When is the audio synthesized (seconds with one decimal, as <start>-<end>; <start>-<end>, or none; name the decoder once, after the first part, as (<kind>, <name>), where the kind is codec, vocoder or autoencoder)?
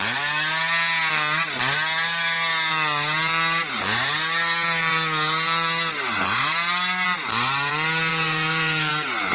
8.1-8.9 (vocoder, Vocos)